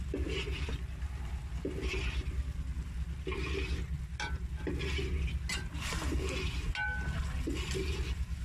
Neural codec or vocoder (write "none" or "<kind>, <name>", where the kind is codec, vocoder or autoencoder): none